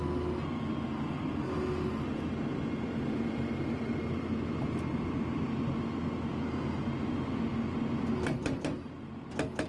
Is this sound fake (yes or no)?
no